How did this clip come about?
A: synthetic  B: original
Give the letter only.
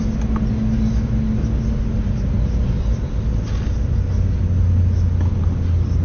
B